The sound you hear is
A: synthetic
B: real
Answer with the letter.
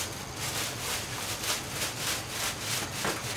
B